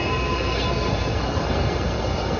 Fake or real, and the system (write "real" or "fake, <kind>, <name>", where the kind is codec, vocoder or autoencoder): fake, codec, SNAC